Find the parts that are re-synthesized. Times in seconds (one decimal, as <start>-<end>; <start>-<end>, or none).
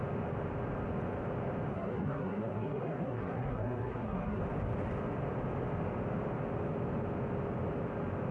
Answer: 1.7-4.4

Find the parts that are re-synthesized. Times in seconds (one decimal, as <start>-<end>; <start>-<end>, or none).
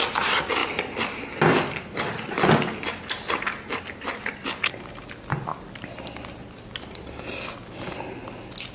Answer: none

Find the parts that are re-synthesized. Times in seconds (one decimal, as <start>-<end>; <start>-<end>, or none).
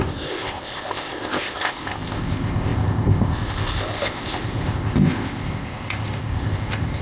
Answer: 0.0-7.0